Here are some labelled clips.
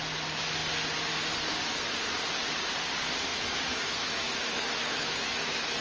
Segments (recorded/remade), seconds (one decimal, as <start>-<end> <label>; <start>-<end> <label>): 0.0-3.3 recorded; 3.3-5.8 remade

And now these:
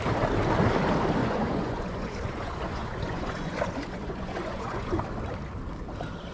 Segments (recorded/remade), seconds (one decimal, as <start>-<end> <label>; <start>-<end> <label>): 0.0-1.2 recorded; 1.2-5.0 remade; 5.0-6.3 recorded

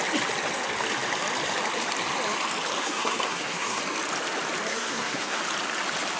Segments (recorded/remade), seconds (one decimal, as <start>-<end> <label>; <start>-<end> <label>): 0.0-2.8 recorded; 2.8-3.8 remade; 3.8-4.7 recorded; 4.7-5.4 remade; 5.4-6.2 recorded